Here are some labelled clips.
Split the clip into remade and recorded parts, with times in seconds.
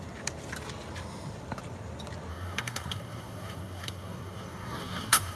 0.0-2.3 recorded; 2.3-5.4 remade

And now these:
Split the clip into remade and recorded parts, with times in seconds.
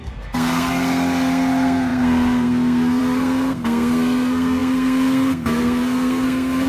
0.0-6.7 remade